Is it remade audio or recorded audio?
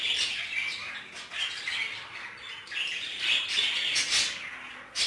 recorded